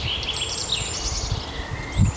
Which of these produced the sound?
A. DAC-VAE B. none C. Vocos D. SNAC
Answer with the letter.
B